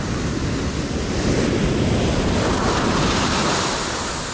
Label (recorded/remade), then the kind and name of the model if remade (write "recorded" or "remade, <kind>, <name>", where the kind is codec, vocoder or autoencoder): recorded